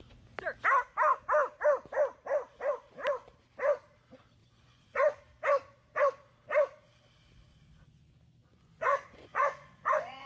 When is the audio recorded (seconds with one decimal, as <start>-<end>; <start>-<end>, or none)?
0.0-4.4; 5.2-8.4